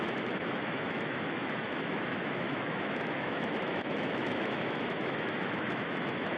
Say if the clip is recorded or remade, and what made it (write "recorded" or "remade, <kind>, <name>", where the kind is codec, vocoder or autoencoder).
remade, autoencoder, DAC-VAE